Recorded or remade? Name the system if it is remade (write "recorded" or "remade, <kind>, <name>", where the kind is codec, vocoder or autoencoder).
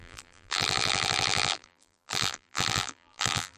remade, vocoder, BigVGAN v2